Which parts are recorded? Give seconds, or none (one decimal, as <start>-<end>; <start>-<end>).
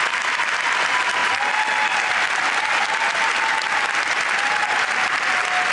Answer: 0.0-5.7